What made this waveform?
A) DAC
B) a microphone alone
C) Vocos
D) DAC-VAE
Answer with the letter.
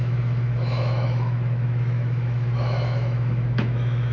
D